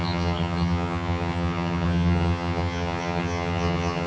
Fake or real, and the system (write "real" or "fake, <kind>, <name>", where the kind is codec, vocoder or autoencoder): fake, vocoder, HiFi-GAN